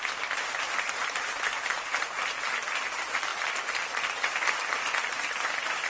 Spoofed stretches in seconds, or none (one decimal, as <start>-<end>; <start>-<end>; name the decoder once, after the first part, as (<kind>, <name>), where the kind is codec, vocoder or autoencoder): none